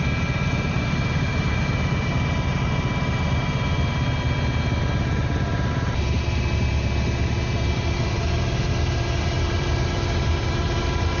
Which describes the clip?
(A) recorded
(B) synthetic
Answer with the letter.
A